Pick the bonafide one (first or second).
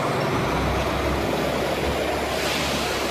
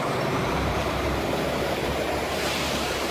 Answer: first